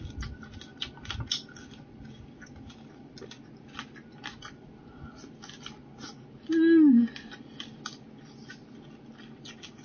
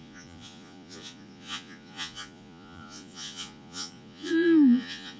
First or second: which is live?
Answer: first